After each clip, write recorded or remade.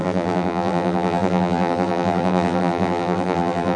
remade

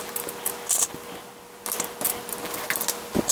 recorded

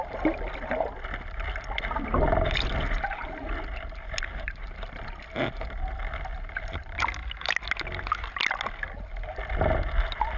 recorded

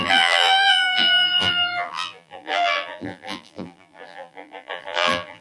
remade